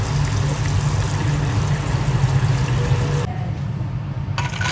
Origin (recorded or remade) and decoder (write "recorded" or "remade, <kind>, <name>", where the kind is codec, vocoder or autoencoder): recorded